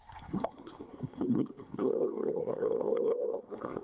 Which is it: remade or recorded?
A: remade